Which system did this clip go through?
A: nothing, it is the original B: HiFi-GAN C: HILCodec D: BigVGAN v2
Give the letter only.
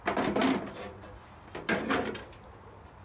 A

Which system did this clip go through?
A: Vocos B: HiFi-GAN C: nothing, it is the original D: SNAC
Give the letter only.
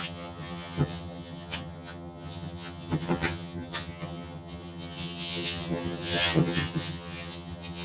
B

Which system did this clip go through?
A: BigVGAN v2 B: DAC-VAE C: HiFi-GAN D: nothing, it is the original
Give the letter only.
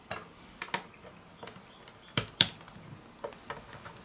D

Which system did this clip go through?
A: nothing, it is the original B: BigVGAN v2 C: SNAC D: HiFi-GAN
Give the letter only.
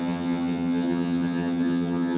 D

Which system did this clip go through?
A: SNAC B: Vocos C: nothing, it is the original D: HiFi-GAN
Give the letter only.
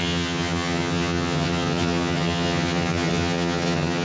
D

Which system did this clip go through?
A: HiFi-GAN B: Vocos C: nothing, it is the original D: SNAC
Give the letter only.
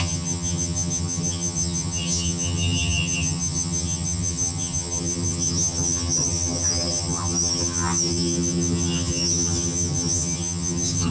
A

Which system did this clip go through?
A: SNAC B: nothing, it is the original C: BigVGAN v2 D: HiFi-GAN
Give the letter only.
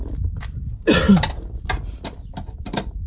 B